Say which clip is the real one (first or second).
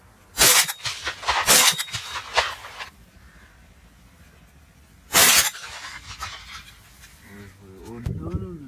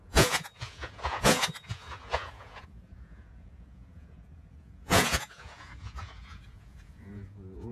first